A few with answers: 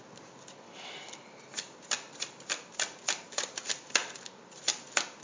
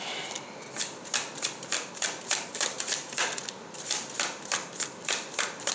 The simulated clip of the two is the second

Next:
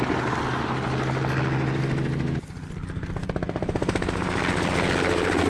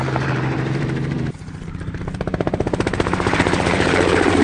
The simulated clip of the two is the second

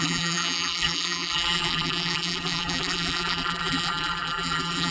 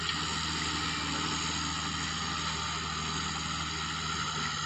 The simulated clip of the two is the first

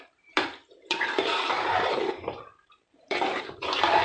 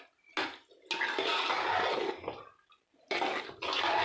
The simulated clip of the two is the first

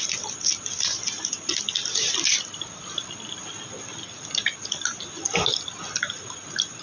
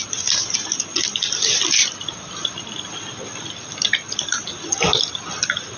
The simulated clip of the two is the second